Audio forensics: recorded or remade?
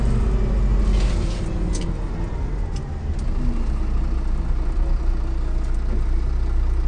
recorded